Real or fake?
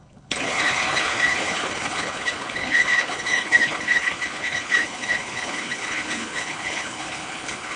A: fake